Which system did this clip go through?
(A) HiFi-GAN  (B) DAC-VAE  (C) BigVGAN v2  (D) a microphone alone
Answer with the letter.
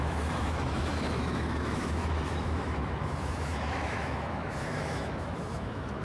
B